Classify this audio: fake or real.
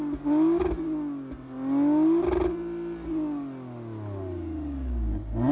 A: real